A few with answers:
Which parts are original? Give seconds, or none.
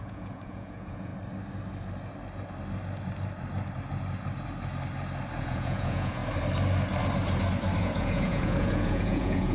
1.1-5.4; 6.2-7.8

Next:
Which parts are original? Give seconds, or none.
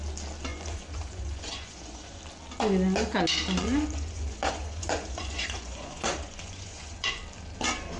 0.0-0.5; 2.2-3.6; 7.2-8.0